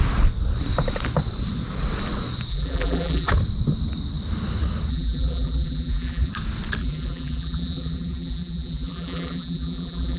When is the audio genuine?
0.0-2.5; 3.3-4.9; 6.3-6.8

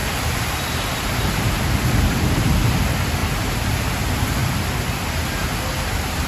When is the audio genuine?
2.8-3.2; 3.9-6.3

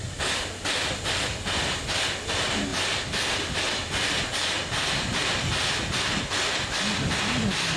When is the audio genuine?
0.0-4.7; 5.4-7.8

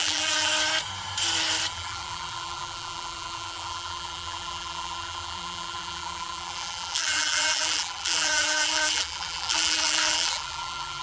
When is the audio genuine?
0.5-1.7